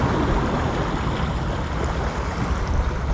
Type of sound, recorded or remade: recorded